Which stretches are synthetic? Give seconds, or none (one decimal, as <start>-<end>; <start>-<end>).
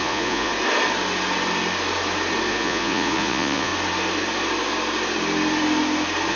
0.0-0.5; 2.5-3.7